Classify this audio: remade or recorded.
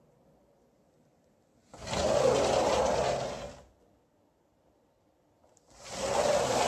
recorded